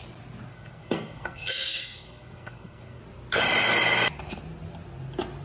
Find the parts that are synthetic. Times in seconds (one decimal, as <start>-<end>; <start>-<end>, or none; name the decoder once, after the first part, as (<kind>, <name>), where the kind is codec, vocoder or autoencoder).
0.5-3.0 (codec, SNAC)